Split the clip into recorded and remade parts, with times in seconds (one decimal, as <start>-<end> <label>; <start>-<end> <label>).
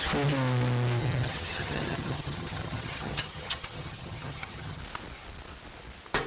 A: 0.0-1.0 recorded; 1.0-4.8 remade; 4.8-6.3 recorded